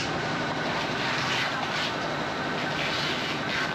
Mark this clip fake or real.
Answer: real